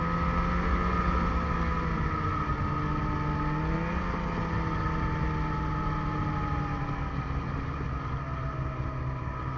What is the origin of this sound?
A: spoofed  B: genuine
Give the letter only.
B